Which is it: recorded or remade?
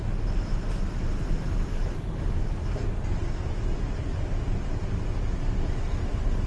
recorded